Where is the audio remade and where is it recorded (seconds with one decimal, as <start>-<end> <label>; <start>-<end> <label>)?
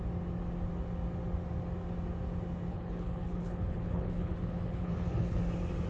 0.0-2.7 recorded; 2.7-5.4 remade; 5.4-5.9 recorded